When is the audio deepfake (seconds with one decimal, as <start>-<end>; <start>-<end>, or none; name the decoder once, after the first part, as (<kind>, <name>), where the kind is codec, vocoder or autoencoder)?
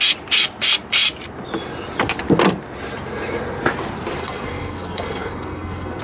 4.2-6.0 (codec, SNAC)